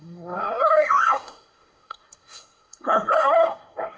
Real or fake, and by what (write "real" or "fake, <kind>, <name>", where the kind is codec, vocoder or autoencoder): fake, codec, SNAC